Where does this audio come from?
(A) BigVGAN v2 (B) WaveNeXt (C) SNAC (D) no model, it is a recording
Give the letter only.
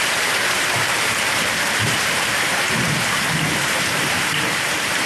A